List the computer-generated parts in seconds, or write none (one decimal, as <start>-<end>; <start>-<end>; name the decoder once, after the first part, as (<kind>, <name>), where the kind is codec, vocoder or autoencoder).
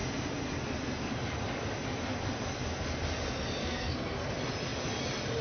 3.6-4.3 (codec, SNAC)